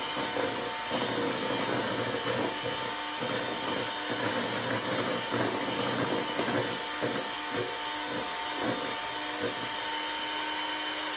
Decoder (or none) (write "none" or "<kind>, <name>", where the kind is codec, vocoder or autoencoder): none